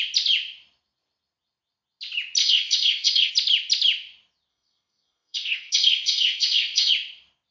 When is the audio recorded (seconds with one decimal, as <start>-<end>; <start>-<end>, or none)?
0.0-2.4; 3.3-4.5; 6.9-7.5